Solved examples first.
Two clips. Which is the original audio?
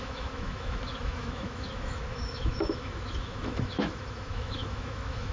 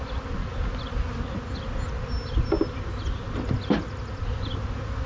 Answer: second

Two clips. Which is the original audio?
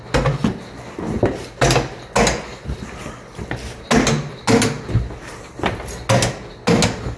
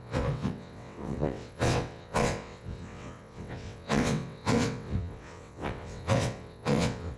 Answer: first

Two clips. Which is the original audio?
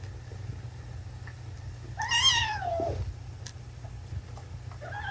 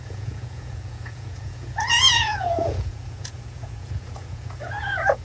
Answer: first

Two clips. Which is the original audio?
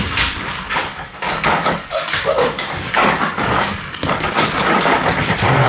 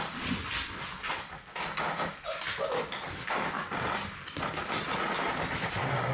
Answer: second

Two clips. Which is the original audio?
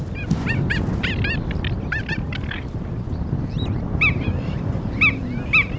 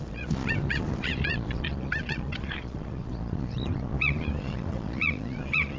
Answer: first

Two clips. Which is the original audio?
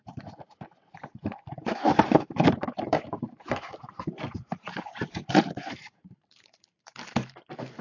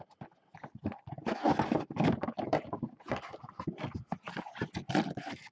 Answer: second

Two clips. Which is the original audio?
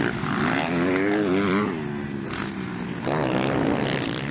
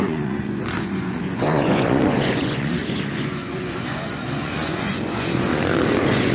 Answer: first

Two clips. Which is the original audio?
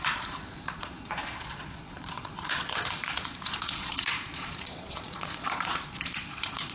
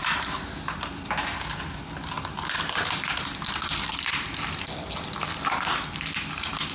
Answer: second